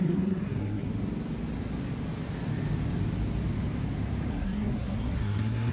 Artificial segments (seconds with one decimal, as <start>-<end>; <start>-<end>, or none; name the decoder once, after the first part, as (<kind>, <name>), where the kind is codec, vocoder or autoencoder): 0.0-0.9 (codec, SNAC); 4.3-5.7